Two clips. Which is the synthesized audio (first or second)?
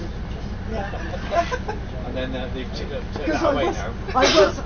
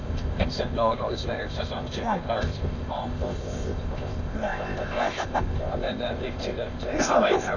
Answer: second